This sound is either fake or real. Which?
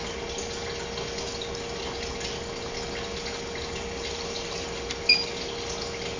real